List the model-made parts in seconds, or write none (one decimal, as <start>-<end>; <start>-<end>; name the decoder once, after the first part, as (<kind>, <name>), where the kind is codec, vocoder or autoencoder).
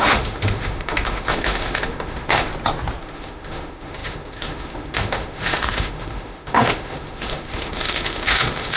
0.0-2.5 (autoencoder, DAC-VAE); 3.0-8.8